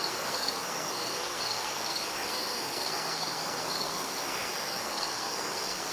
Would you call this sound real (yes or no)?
no